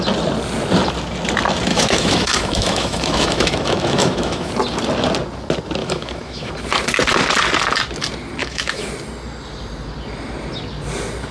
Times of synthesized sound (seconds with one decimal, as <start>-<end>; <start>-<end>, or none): 1.7-4.5; 5.8-6.5; 8.4-8.9